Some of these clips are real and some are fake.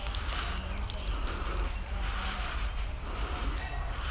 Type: real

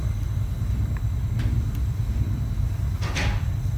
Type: real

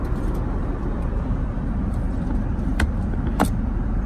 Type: fake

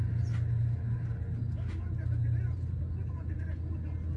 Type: real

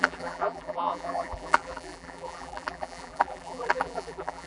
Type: fake